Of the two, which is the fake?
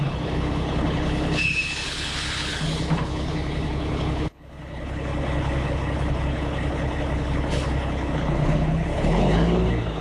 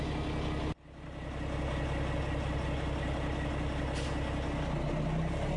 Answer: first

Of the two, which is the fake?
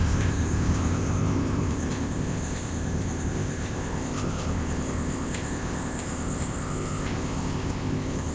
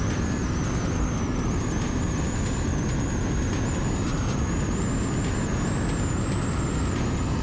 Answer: first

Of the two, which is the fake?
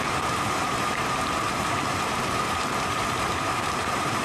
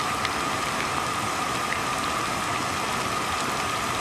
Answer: first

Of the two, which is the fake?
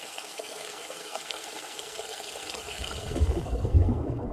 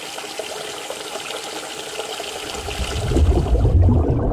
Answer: first